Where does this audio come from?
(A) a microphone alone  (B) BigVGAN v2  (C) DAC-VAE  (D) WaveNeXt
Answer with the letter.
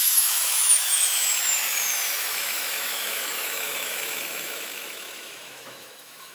C